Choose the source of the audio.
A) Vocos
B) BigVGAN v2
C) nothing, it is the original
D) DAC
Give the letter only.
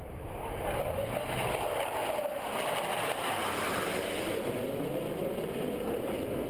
C